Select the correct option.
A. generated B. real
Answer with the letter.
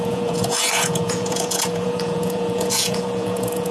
A